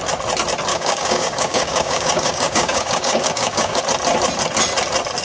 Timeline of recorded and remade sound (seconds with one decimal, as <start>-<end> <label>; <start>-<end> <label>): 0.0-0.7 recorded; 0.7-3.8 remade; 3.8-5.2 recorded